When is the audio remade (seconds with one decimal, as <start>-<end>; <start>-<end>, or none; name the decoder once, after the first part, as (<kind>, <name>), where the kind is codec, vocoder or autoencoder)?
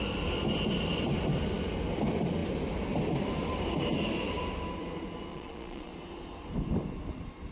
5.3-5.9 (vocoder, Vocos)